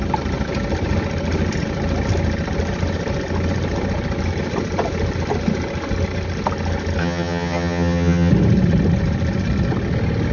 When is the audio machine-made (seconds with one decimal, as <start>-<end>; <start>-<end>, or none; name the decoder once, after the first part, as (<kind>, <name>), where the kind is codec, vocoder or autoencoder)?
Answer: 7.0-8.3 (vocoder, HiFi-GAN)